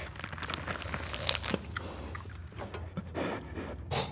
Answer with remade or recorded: recorded